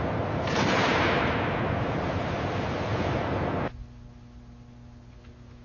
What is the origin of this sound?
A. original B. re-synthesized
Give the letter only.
A